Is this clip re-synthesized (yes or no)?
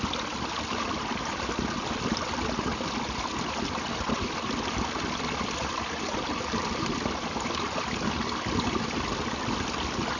no